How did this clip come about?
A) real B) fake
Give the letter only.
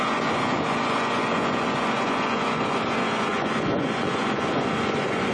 B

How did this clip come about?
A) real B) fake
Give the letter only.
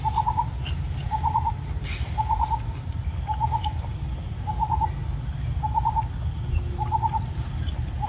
A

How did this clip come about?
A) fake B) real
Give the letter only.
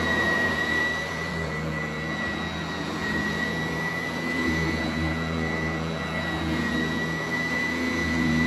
A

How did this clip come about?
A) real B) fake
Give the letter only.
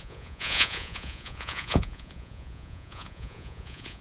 B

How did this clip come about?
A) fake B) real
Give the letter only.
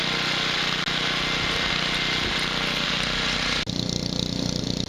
B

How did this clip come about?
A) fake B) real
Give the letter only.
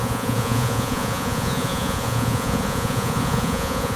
A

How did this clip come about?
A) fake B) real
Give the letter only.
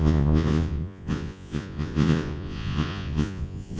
A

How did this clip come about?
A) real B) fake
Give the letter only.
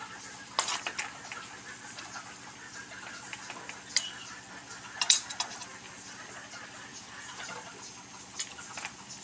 A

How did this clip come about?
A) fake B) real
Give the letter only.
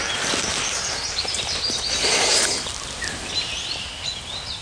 B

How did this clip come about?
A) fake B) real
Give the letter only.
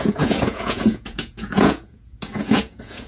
A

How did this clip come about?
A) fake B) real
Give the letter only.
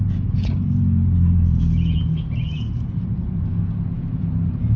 A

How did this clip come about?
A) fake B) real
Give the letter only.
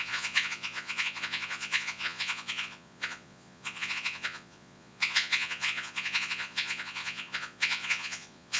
A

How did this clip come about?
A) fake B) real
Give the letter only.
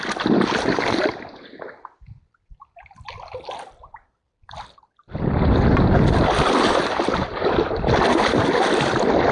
B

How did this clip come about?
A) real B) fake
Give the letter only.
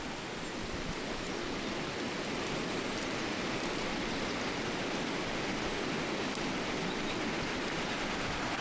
A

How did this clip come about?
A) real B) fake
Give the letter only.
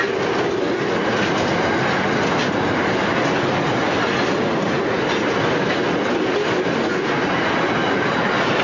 A